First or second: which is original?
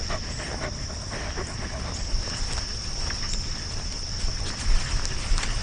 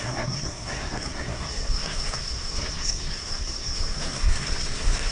first